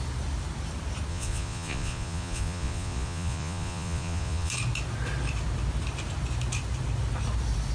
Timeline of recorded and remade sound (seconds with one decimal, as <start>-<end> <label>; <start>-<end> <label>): 0.0-1.1 recorded; 1.1-4.5 remade; 4.5-7.7 recorded